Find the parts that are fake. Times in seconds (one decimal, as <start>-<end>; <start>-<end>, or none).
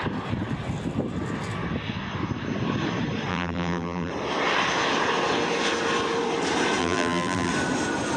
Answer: 3.3-4.1; 6.8-7.5